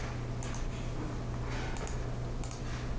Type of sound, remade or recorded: recorded